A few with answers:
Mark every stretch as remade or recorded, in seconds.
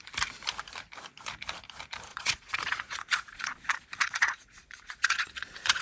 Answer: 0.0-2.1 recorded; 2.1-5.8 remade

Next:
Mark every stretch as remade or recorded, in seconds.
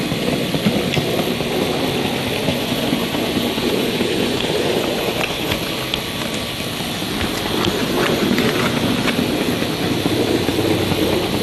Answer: 0.0-2.5 recorded; 2.5-5.7 remade; 5.7-7.8 recorded; 7.8-9.1 remade; 9.1-11.4 recorded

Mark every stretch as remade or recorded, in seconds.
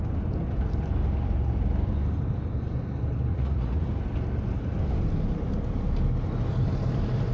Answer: 0.0-3.3 recorded; 3.3-3.9 remade; 3.9-7.3 recorded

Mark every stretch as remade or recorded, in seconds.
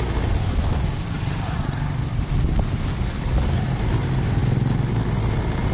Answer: 0.0-5.7 recorded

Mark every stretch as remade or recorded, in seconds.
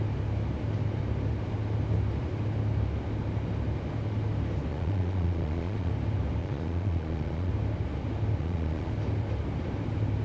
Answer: 0.0-4.7 recorded; 4.7-5.9 remade; 5.9-6.4 recorded; 6.4-7.5 remade; 7.5-8.4 recorded; 8.4-8.9 remade; 8.9-10.2 recorded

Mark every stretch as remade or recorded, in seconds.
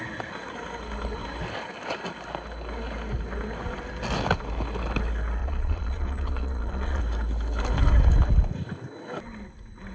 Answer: 0.0-5.4 recorded; 5.4-7.0 remade; 7.0-9.9 recorded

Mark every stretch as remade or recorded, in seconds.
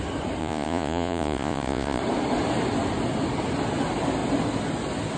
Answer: 0.0-0.4 recorded; 0.4-2.0 remade; 2.0-5.2 recorded